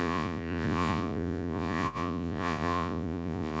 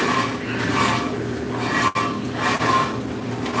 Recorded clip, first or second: second